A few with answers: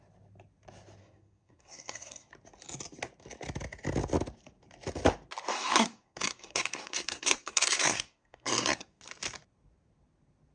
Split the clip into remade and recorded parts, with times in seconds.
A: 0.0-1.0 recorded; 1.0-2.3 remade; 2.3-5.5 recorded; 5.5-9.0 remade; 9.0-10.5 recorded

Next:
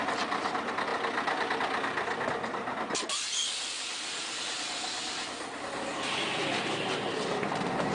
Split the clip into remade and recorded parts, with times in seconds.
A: 0.0-7.9 recorded

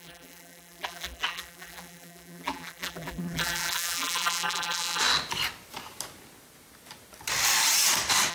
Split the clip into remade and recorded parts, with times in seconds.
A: 0.0-5.0 remade; 5.0-8.3 recorded

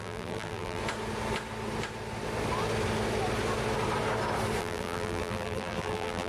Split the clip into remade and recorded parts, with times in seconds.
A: 0.0-0.8 remade; 0.8-4.6 recorded; 4.6-6.3 remade

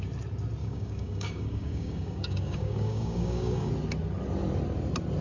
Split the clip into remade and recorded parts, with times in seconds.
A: 0.0-0.6 recorded; 0.6-3.7 remade; 3.7-5.2 recorded

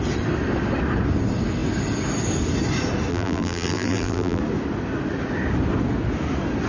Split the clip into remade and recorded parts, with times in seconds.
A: 0.0-3.1 recorded; 3.1-4.4 remade; 4.4-6.7 recorded